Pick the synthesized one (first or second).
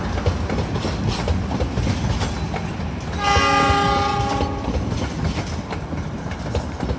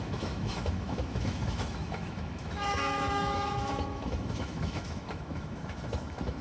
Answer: second